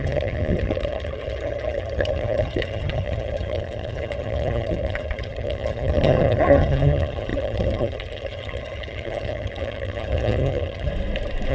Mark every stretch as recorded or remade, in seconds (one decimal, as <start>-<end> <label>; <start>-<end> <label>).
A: 0.0-10.9 remade; 10.9-11.5 recorded